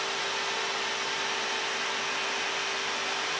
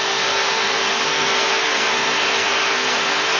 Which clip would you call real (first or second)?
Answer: first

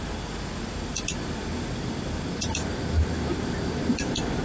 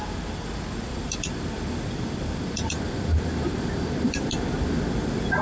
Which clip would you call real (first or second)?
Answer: first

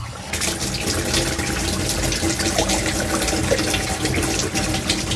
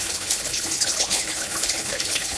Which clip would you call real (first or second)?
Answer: first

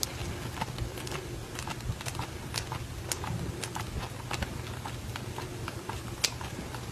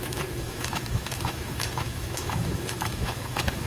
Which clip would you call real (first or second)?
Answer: first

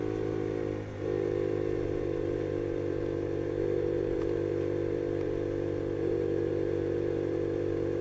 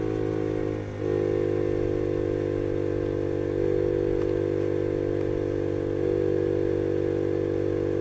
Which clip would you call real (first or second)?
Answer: second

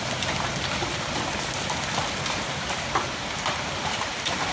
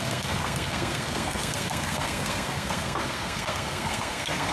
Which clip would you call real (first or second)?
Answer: first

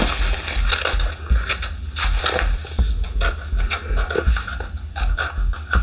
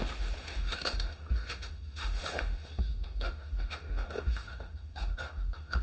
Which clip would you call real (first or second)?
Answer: first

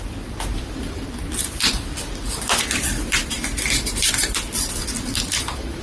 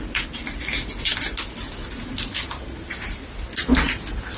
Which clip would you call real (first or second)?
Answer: second